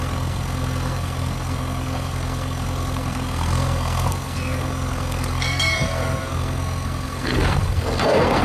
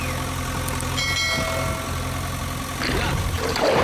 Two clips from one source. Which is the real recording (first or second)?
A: second